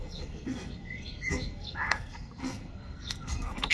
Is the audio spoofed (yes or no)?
yes